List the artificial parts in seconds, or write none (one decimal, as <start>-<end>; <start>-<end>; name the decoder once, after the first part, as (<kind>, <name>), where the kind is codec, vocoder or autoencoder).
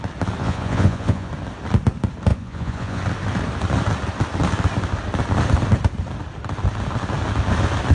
0.4-1.3 (vocoder, Vocos); 2.3-3.0